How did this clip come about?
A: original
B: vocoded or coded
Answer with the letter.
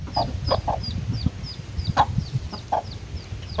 A